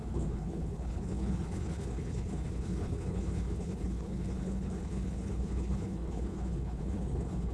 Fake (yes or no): yes